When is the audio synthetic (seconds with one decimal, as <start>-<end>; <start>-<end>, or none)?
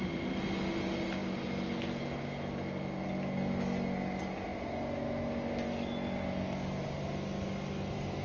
none